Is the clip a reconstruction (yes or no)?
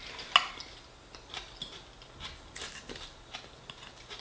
no